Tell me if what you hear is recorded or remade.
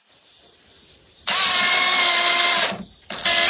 recorded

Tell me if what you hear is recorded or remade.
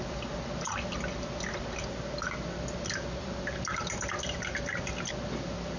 recorded